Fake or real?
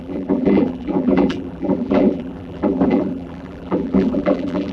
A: fake